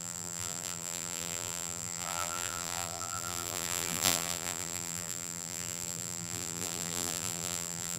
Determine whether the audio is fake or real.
fake